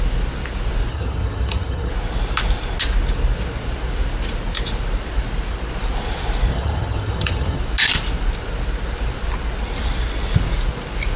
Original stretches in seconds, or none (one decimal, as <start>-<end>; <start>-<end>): 0.0-0.9; 1.9-6.5; 7.6-11.2